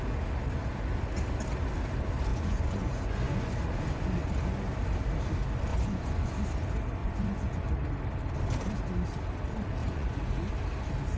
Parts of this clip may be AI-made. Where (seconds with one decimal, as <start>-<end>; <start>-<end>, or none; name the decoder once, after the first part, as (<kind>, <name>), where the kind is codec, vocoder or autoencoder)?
2.3-3.5 (vocoder, Vocos); 5.7-6.3; 7.0-7.7; 9.8-10.5